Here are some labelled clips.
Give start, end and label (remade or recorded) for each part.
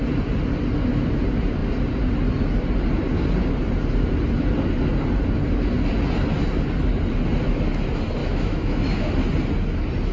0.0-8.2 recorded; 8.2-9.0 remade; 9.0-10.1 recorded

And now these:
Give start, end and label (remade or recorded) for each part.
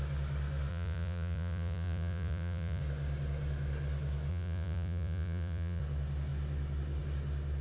0.0-0.7 recorded; 0.7-2.8 remade; 2.8-4.3 recorded; 4.3-5.8 remade; 5.8-7.6 recorded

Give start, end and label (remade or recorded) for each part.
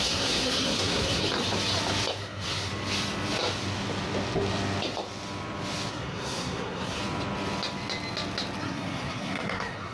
0.0-1.3 remade; 1.3-2.2 recorded; 2.2-2.7 remade; 2.7-5.9 recorded; 5.9-7.0 remade; 7.0-8.6 recorded; 8.6-9.9 remade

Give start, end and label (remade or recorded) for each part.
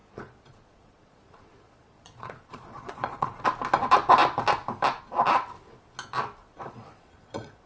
0.0-3.4 remade; 3.4-6.4 recorded; 6.4-7.7 remade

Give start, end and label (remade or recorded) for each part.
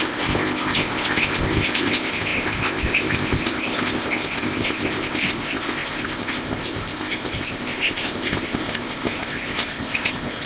0.0-10.5 remade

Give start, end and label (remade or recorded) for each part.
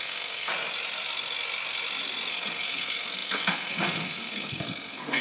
0.0-0.5 remade; 0.5-2.3 recorded; 2.3-5.2 remade